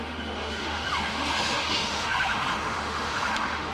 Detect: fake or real fake